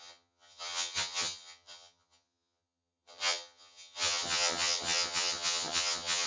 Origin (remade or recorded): remade